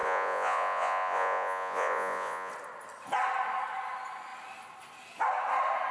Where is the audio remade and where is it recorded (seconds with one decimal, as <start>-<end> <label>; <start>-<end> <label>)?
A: 0.0-2.5 remade; 2.5-5.9 recorded